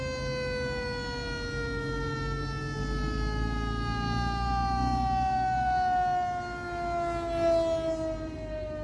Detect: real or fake real